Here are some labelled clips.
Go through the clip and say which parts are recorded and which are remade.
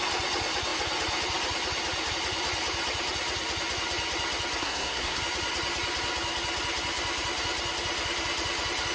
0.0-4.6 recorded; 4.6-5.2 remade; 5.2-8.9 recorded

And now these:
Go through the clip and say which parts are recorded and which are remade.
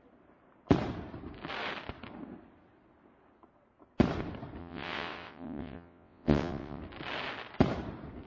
0.0-4.6 recorded; 4.6-6.8 remade; 6.8-8.3 recorded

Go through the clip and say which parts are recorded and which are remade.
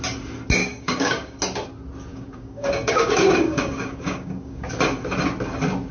0.0-0.6 recorded; 0.6-1.4 remade; 1.4-2.1 recorded; 2.1-4.7 remade; 4.7-5.9 recorded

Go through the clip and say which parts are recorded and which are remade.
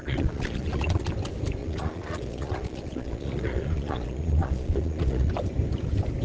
0.0-1.1 remade; 1.1-1.6 recorded; 1.6-5.3 remade; 5.3-6.2 recorded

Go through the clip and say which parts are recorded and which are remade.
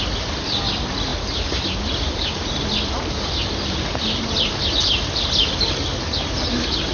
0.0-6.9 recorded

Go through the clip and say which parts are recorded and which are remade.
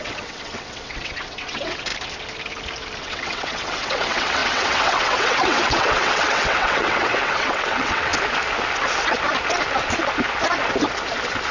0.0-1.9 remade; 1.9-3.0 recorded; 3.0-8.1 remade; 8.1-11.5 recorded